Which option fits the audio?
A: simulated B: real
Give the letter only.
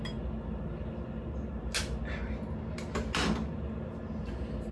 B